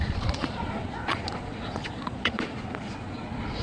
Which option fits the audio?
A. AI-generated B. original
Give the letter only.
A